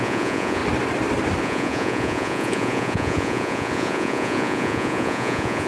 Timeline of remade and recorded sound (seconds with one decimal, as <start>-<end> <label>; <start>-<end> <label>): 0.0-0.6 remade; 0.6-1.4 recorded; 1.4-5.7 remade